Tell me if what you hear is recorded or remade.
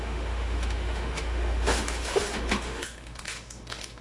remade